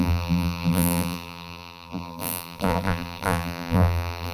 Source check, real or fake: fake